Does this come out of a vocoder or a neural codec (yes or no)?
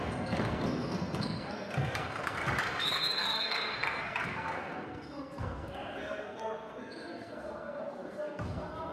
yes